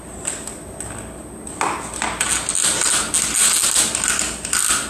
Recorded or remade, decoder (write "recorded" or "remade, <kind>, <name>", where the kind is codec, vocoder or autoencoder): recorded